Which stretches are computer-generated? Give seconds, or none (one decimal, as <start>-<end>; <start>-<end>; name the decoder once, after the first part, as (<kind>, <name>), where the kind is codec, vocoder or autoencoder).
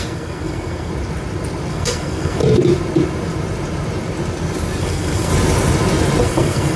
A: 0.0-0.9 (codec, SNAC); 1.7-2.4; 4.8-5.3; 6.2-6.8